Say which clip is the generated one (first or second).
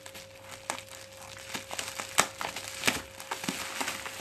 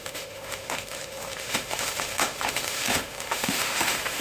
second